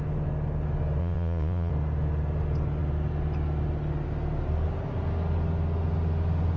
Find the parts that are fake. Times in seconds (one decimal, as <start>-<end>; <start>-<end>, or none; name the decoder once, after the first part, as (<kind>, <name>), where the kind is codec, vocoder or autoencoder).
1.0-1.7 (vocoder, Vocos)